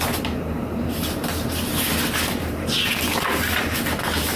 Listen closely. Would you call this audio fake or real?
real